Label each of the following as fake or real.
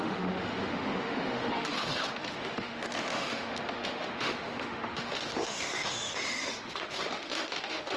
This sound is fake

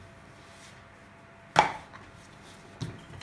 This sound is real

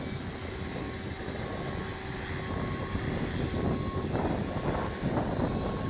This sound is real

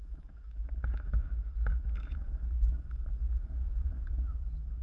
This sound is fake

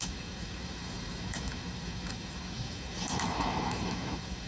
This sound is fake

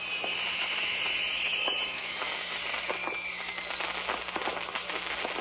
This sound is real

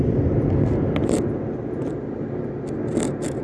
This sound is real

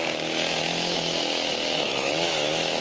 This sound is fake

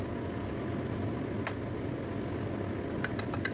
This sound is real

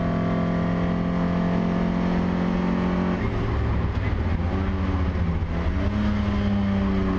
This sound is real